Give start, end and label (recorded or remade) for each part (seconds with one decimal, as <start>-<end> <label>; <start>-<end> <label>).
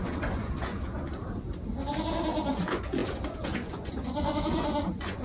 0.0-1.1 remade; 1.1-2.5 recorded; 2.5-5.2 remade